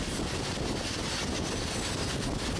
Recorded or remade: recorded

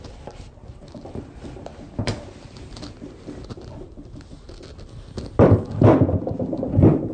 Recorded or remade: recorded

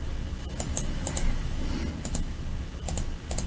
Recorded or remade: recorded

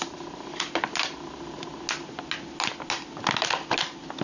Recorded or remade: recorded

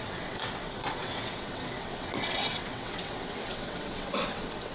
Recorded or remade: remade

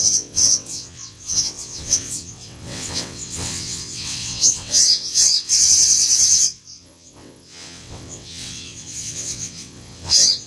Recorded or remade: remade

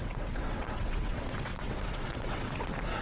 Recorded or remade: remade